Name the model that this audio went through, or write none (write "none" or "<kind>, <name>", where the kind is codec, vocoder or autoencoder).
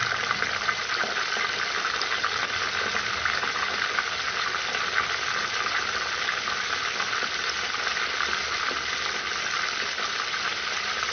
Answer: none